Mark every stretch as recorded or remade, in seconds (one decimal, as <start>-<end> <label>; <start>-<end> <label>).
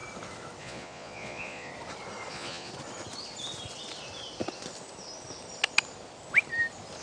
0.0-0.6 recorded; 0.6-1.7 remade; 1.7-2.3 recorded; 2.3-2.7 remade; 2.7-7.0 recorded